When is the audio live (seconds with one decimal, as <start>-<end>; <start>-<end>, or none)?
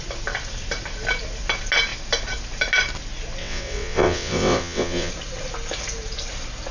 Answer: 0.0-3.4; 5.1-6.7